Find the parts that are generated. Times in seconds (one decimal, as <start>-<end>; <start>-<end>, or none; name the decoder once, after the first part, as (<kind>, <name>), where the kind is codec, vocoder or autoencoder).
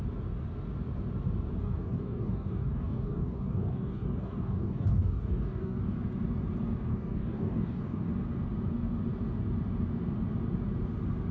1.6-5.8 (codec, DAC); 6.9-8.1